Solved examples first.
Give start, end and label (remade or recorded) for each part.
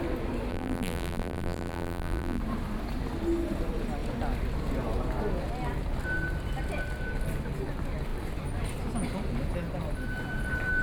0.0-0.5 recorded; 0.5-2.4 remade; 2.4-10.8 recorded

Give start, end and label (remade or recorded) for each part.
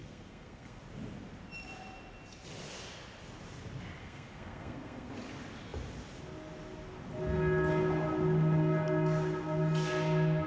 0.0-0.8 remade; 0.8-4.0 recorded; 4.0-5.1 remade; 5.1-10.5 recorded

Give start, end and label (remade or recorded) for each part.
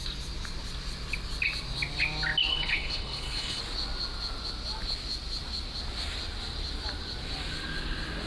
0.0-2.5 recorded; 2.5-3.6 remade; 3.6-8.3 recorded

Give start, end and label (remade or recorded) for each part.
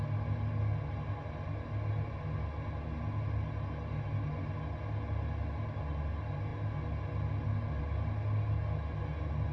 0.0-9.5 recorded